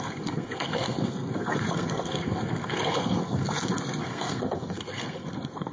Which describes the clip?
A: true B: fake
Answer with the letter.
B